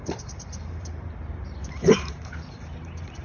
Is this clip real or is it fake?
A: fake